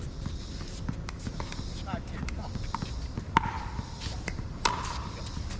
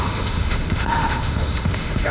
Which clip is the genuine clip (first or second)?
first